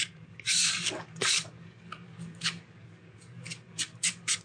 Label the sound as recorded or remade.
remade